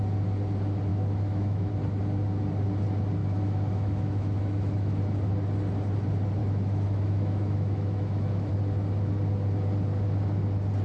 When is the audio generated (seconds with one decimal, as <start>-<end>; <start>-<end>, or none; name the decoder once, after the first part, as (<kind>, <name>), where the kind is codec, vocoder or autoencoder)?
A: 0.9-1.7 (autoencoder, DAC-VAE); 3.2-5.0; 6.4-8.5